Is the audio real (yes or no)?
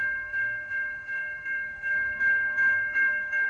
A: no